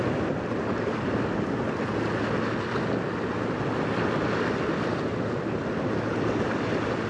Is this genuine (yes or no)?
yes